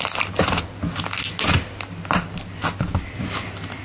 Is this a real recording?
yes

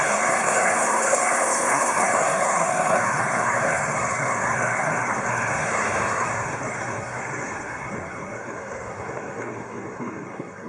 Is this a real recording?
no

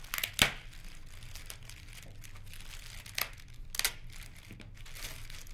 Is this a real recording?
yes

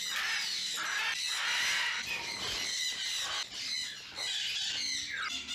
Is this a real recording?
yes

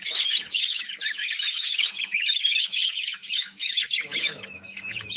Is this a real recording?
no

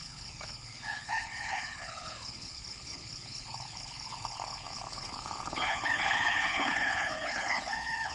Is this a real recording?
no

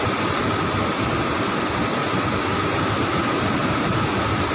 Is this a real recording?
yes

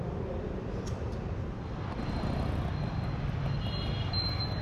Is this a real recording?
yes